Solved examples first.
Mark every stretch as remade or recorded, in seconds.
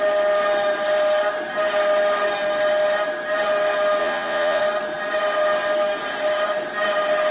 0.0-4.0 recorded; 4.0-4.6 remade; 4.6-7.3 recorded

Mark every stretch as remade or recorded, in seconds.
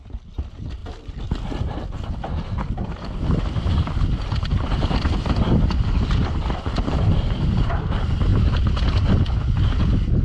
0.0-0.8 recorded; 0.8-3.7 remade; 3.7-4.5 recorded; 4.5-7.7 remade; 7.7-10.2 recorded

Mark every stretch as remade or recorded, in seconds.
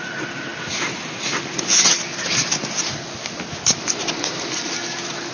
0.0-5.3 recorded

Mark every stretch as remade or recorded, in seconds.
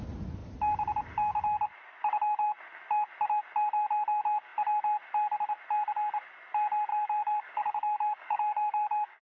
0.0-6.9 recorded; 6.9-9.3 remade